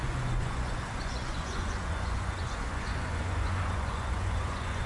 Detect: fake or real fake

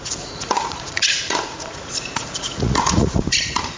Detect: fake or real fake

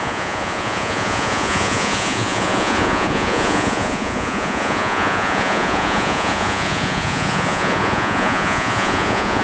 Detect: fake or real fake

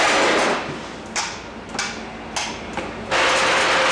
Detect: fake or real real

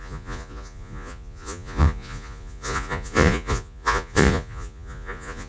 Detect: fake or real fake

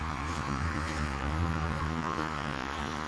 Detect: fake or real fake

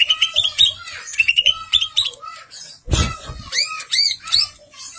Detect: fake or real fake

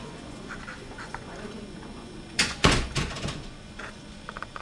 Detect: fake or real fake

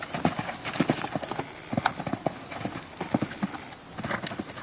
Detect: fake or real real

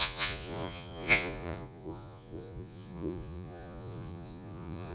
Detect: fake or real fake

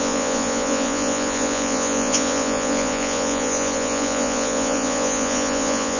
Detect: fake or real fake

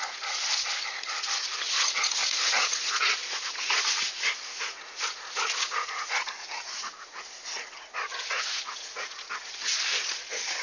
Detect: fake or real fake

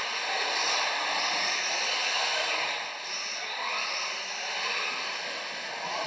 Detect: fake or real real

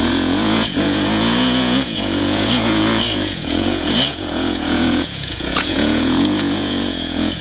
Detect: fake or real fake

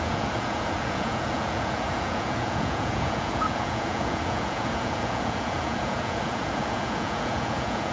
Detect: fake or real fake